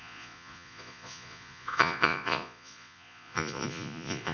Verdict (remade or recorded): remade